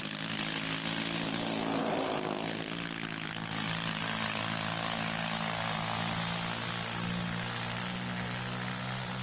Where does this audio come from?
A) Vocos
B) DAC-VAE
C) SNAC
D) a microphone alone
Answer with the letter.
D